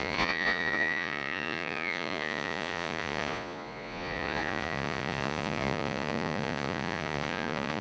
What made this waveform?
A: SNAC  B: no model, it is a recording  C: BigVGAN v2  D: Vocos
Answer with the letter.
D